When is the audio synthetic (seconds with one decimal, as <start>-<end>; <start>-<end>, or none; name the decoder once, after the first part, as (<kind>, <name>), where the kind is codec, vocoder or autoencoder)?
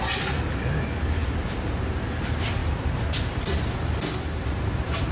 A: 1.2-1.7 (vocoder, BigVGAN v2); 2.6-3.4